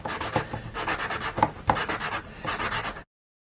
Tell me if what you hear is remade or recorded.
recorded